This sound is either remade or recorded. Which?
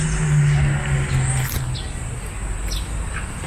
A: recorded